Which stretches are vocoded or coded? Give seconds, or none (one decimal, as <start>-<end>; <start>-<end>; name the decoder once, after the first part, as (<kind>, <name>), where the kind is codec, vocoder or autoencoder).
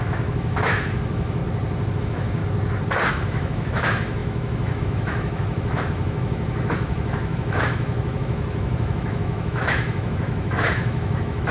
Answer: 0.0-1.4 (autoencoder, DAC-VAE); 2.0-2.4; 3.1-11.5